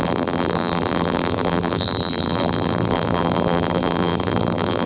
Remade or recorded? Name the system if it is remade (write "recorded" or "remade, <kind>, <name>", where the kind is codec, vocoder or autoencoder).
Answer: remade, vocoder, BigVGAN v2